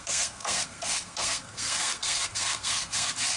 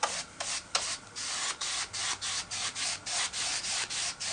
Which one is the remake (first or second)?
first